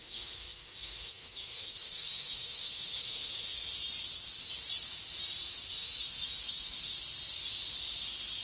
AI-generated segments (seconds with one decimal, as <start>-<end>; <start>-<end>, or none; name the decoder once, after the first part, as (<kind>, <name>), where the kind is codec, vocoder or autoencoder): 0.0-3.6 (autoencoder, DAC-VAE); 5.7-6.9